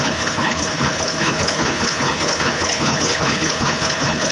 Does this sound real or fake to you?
fake